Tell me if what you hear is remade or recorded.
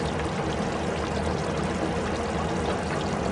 recorded